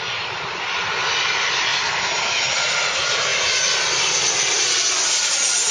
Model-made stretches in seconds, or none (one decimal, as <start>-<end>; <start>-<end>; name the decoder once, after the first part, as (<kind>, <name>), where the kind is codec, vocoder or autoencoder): none